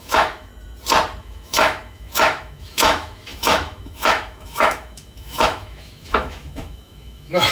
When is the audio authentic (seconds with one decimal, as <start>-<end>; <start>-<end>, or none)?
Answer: 0.5-1.2